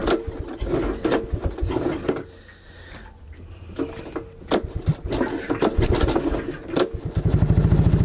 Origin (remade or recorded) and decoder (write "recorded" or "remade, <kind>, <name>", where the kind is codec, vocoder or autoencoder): recorded